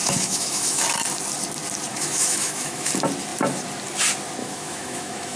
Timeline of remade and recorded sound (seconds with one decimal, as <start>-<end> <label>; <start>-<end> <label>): 0.0-0.8 remade; 0.8-1.9 recorded; 1.9-2.9 remade; 2.9-4.4 recorded; 4.4-5.4 remade